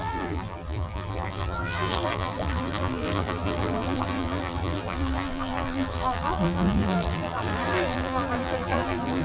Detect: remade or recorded remade